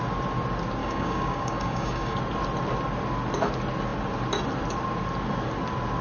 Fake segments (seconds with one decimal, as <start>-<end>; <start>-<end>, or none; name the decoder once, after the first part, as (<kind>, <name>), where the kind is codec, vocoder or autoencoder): 0.8-2.2 (codec, DAC)